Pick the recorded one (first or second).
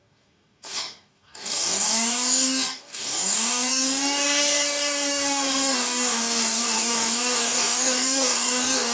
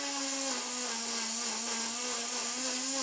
second